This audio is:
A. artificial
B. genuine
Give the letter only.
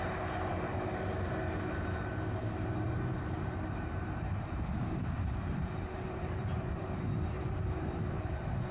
A